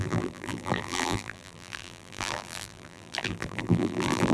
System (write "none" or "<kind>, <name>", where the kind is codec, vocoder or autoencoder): vocoder, BigVGAN v2